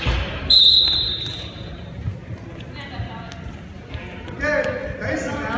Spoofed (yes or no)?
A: no